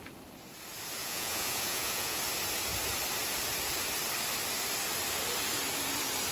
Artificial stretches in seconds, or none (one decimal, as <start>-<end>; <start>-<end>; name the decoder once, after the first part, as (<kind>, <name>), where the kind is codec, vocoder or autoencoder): 1.0-2.2 (vocoder, Vocos)